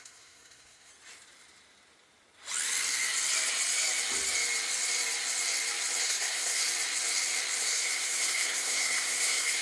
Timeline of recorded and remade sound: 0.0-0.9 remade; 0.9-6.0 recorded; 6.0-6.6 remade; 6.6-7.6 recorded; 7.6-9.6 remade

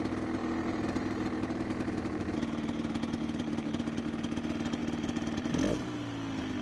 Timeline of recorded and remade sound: 0.0-0.4 recorded; 0.4-3.8 remade; 3.8-4.8 recorded; 4.8-5.5 remade; 5.5-6.6 recorded

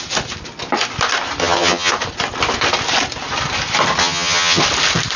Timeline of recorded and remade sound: 0.0-1.4 recorded; 1.4-1.9 remade; 1.9-4.0 recorded; 4.0-4.6 remade; 4.6-5.2 recorded

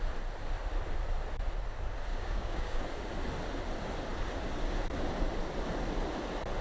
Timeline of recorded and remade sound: 0.0-2.1 recorded; 2.1-2.8 remade; 2.8-6.6 recorded